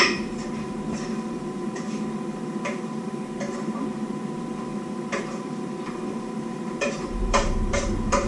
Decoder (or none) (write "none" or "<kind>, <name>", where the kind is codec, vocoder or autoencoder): vocoder, BigVGAN v2